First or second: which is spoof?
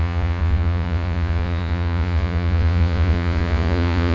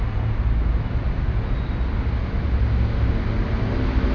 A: first